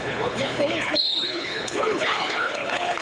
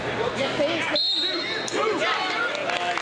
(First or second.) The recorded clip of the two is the second